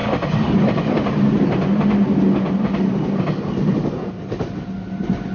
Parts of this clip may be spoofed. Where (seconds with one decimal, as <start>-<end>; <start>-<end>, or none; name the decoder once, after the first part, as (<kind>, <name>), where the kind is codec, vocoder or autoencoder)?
none